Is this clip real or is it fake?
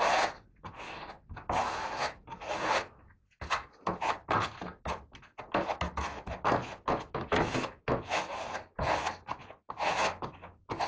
real